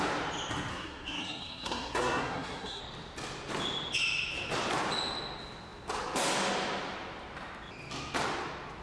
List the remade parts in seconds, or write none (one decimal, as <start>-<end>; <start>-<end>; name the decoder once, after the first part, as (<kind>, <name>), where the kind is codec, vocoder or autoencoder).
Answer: 0.7-2.8 (codec, SNAC)